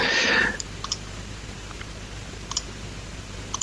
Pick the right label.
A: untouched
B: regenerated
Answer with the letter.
B